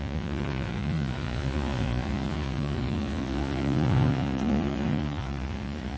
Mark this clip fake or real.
fake